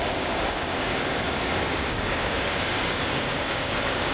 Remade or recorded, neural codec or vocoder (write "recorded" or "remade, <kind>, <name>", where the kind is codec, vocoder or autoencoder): remade, codec, DAC